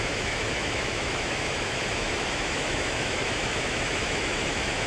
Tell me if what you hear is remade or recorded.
remade